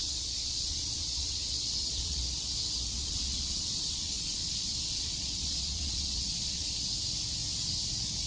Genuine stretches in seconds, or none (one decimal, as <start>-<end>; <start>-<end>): 2.2-3.0; 6.8-8.3